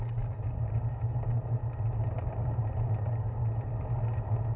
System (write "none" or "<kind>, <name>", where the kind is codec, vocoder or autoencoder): none